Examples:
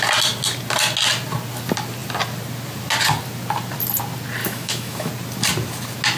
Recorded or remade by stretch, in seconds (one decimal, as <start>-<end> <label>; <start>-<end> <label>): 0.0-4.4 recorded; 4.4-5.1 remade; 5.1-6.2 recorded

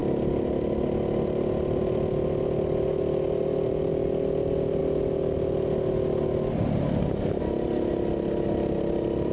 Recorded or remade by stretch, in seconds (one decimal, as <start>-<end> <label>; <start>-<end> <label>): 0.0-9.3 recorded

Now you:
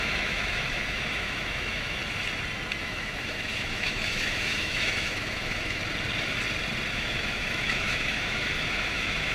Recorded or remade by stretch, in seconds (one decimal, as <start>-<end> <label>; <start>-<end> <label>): 0.0-2.0 remade; 2.0-2.8 recorded; 2.8-5.8 remade; 5.8-6.9 recorded; 6.9-9.3 remade